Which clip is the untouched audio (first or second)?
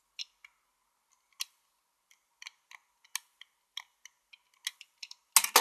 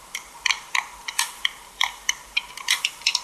first